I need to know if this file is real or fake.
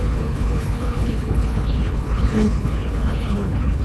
fake